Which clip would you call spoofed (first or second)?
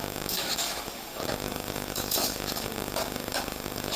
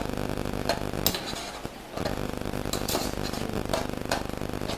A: first